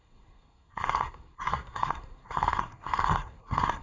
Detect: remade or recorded remade